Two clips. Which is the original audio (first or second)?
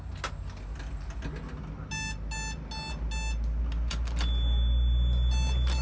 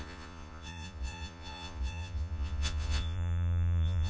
first